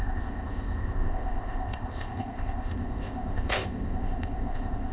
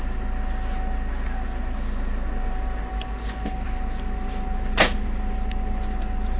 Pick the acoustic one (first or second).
second